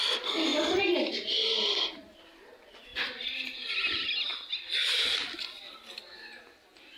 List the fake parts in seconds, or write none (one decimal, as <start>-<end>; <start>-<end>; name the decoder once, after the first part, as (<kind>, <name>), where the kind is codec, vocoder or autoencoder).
none